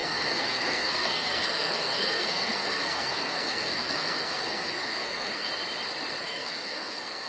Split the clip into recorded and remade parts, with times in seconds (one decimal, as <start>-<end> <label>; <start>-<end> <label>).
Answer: 0.0-5.5 remade; 5.5-6.2 recorded; 6.2-7.3 remade